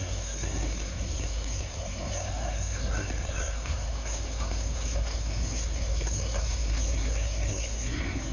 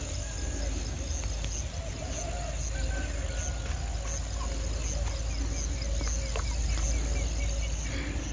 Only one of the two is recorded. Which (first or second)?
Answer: second